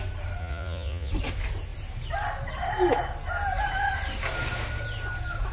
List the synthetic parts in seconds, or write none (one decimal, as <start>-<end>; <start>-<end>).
0.4-1.1